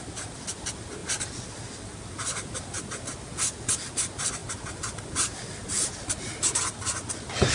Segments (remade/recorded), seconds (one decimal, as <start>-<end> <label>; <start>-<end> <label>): 0.0-7.5 recorded